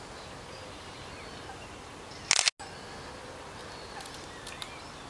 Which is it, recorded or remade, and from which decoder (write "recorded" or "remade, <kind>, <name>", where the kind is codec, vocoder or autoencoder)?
recorded